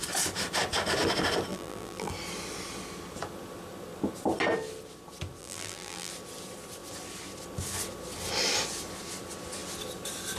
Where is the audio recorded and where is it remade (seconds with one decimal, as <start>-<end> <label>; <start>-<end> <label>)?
0.0-1.5 recorded; 1.5-2.1 remade; 2.1-5.4 recorded; 5.4-6.1 remade; 6.1-10.4 recorded